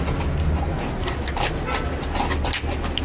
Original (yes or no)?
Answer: yes